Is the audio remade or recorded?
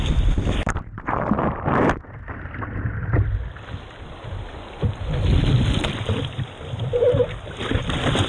remade